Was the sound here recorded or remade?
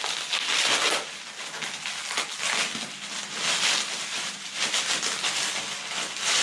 recorded